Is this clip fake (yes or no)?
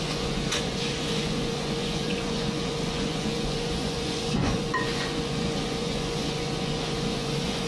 yes